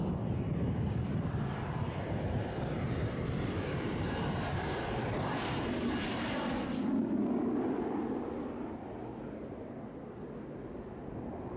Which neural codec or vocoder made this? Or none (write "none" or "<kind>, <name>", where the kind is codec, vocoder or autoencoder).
none